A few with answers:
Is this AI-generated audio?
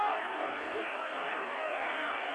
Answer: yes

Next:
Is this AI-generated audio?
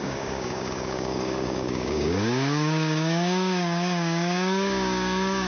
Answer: yes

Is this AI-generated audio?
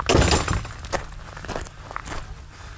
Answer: no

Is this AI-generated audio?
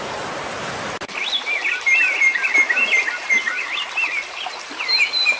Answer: no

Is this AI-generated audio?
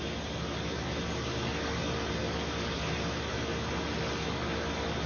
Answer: no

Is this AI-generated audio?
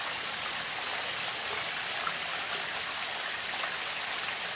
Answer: no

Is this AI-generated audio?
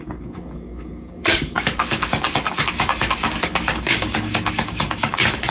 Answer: yes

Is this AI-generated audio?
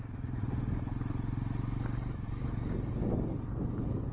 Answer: no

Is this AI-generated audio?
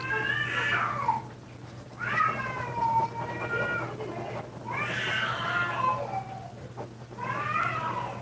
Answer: no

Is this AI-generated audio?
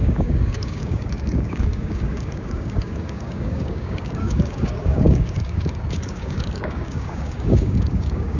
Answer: yes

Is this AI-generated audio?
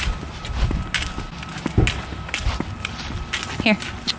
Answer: no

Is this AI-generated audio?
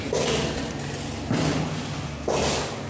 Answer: no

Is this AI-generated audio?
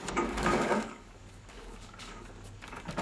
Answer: yes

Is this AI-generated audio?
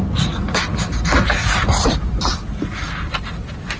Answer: no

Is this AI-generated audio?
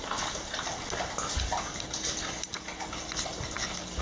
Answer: no